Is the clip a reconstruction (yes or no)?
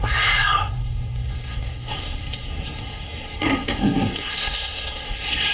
yes